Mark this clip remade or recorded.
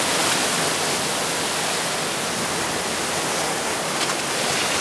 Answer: recorded